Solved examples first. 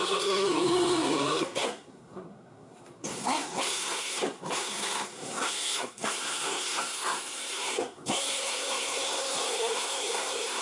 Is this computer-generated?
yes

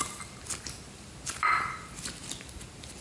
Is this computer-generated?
no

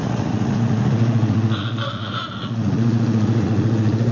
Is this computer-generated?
yes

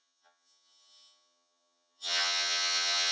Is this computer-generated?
yes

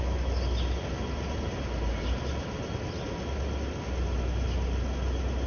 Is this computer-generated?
no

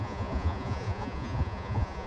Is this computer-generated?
yes